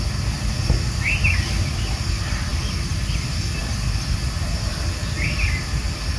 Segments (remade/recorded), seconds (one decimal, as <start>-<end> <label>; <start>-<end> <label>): 0.0-6.2 recorded